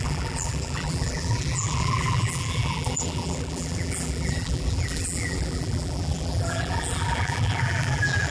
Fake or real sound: fake